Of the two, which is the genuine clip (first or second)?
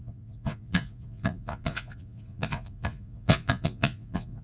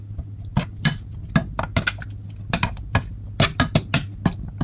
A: second